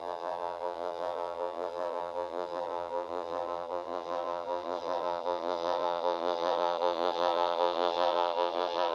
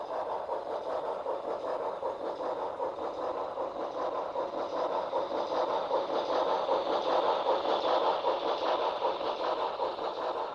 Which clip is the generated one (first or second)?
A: first